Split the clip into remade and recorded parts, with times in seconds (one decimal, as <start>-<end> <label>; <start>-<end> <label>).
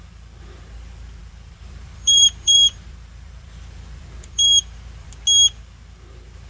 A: 0.0-1.2 recorded; 1.2-5.1 remade; 5.1-6.5 recorded